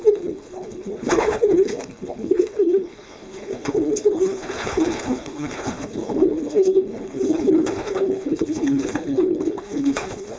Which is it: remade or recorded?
remade